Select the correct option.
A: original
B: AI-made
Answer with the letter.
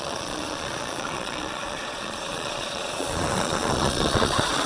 B